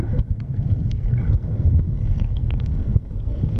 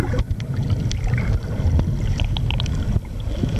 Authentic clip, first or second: second